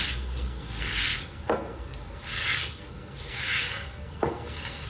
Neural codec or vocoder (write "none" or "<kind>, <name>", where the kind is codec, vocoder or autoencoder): codec, SNAC